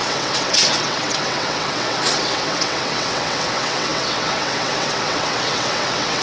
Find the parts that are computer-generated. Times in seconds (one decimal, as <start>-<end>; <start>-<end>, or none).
0.0-6.2